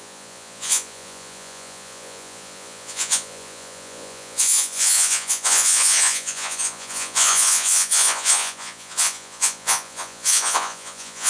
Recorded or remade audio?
remade